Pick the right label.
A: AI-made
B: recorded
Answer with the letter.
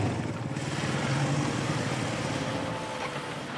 B